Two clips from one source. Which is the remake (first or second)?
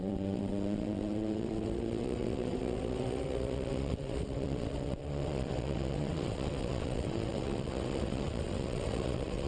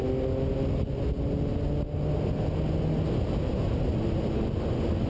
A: first